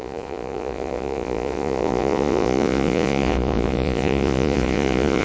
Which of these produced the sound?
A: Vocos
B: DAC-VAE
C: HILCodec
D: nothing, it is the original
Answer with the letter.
A